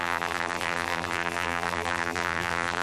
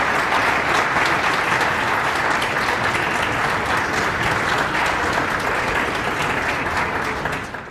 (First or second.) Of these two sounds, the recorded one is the second